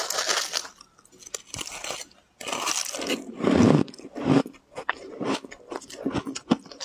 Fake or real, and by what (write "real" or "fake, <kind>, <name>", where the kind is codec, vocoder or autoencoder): real